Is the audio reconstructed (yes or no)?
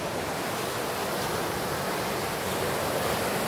no